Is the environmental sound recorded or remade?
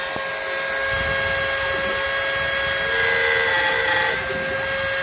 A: recorded